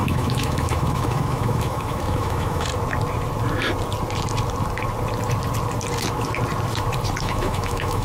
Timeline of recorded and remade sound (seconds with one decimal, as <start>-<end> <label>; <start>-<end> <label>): 0.0-2.7 remade; 2.7-7.2 recorded; 7.2-8.0 remade